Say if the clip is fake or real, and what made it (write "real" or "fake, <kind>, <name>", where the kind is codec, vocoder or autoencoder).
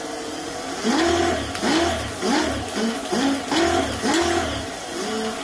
real